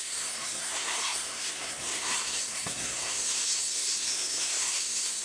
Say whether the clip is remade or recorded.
remade